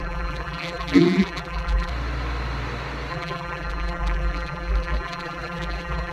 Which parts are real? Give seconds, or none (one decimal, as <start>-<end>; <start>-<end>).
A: 1.9-3.1